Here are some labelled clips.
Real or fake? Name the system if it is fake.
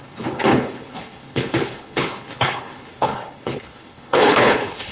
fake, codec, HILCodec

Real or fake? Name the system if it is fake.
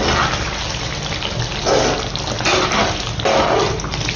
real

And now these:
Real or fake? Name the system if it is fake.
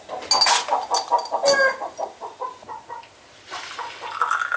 real